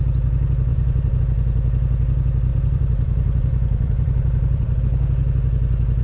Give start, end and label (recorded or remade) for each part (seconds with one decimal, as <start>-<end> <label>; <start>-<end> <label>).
0.0-0.7 recorded; 0.7-1.2 remade; 1.2-2.5 recorded; 2.5-4.8 remade; 4.8-6.0 recorded